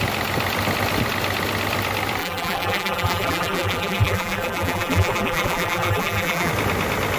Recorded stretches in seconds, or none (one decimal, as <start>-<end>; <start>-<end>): 0.0-2.2; 6.5-7.2